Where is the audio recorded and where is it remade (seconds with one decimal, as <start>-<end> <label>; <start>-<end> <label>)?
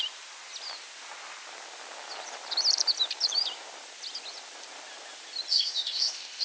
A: 0.0-5.5 recorded; 5.5-6.4 remade